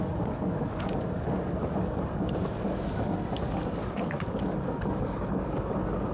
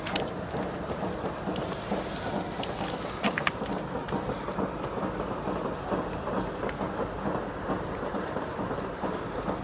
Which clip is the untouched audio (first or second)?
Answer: second